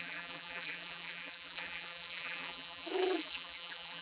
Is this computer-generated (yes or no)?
yes